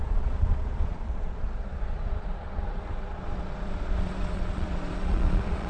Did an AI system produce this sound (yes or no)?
yes